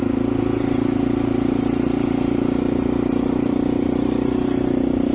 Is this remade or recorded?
remade